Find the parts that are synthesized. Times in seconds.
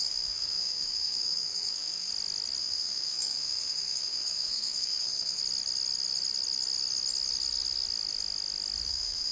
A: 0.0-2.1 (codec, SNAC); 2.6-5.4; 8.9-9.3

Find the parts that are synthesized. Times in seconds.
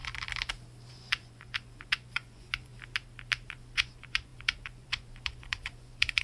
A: 0.9-2.7 (vocoder, Vocos); 3.5-6.2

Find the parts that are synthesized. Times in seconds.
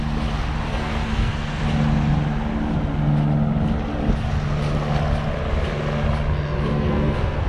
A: 0.7-1.6 (codec, SNAC); 6.7-7.5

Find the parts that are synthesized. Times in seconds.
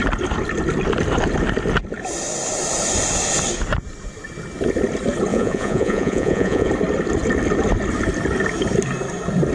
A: 5.3-6.7 (vocoder, Vocos)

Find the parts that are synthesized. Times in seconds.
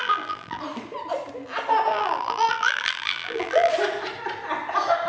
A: 0.0-0.6 (vocoder, BigVGAN v2); 1.9-3.7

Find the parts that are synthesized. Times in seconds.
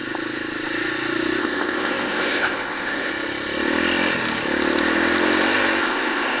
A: 1.4-3.1 (codec, ZipCodec); 5.8-6.4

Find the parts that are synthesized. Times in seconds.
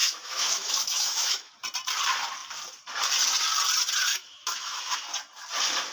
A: 0.0-1.5 (autoencoder, DAC-VAE); 4.1-4.8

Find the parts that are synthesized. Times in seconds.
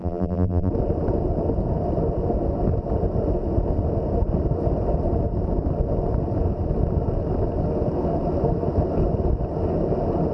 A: 0.0-0.7 (vocoder, BigVGAN v2)